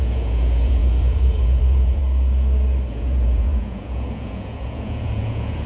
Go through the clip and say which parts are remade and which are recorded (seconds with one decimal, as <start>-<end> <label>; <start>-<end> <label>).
0.0-2.0 remade; 2.0-2.9 recorded; 2.9-5.7 remade